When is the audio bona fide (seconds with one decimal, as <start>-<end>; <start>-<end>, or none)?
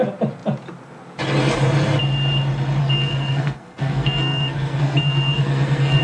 0.0-2.8